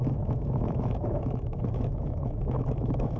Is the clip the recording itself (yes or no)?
no